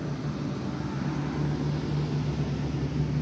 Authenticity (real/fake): real